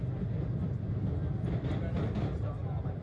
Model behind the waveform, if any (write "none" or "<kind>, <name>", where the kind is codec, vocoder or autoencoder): none